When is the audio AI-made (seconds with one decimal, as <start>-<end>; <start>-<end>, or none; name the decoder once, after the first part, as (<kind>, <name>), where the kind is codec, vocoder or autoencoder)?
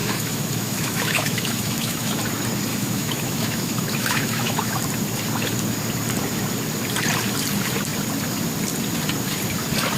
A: 0.0-2.2 (autoencoder, DAC-VAE); 2.7-4.8